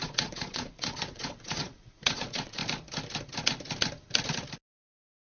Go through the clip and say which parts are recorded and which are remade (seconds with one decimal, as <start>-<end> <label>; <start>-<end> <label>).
0.0-2.6 remade; 2.6-5.4 recorded